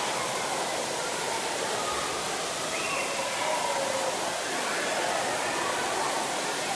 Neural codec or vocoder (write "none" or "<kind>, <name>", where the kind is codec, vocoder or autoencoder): none